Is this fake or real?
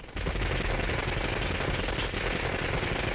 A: real